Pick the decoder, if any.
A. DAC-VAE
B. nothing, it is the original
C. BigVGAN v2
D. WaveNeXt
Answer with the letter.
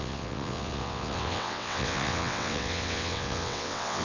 D